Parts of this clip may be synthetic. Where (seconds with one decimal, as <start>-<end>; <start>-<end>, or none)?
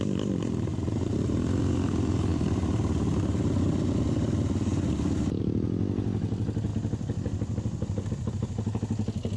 none